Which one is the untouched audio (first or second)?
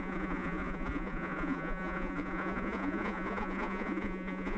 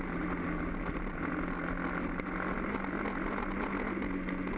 second